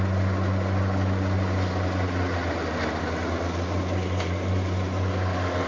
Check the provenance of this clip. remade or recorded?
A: recorded